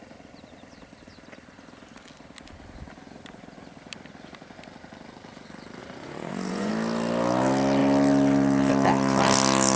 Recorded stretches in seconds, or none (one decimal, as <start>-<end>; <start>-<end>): 0.0-5.8; 6.7-9.8